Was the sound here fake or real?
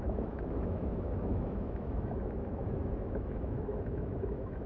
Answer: fake